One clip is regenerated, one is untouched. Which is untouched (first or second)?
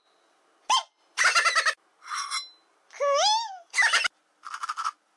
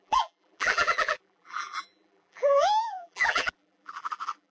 first